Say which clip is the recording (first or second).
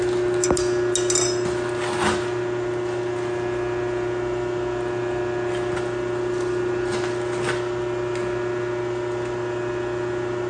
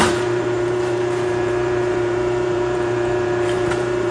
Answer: first